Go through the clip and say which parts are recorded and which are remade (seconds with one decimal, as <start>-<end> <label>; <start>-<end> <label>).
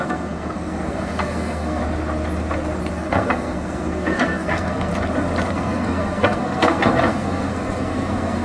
0.0-1.8 remade; 1.8-2.9 recorded; 2.9-4.9 remade; 4.9-5.5 recorded; 5.5-8.4 remade